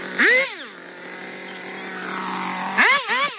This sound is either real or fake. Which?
real